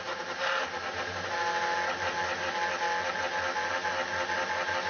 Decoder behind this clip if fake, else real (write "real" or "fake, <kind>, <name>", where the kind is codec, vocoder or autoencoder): real